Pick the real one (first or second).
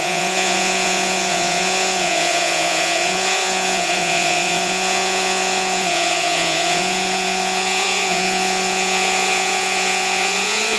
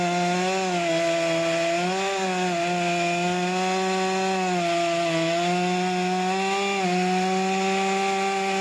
second